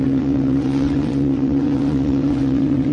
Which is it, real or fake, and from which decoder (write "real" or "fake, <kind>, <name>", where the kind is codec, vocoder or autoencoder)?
fake, vocoder, WaveNeXt